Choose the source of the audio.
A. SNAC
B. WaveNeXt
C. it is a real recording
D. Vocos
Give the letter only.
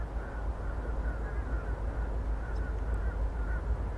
C